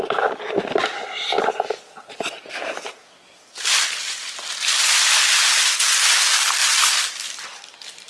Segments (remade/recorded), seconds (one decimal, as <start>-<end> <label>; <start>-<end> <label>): 0.0-1.0 recorded; 1.0-5.9 remade; 5.9-6.6 recorded; 6.6-7.2 remade; 7.2-8.1 recorded